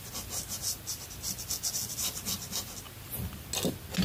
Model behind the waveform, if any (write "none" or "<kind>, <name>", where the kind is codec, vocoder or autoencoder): none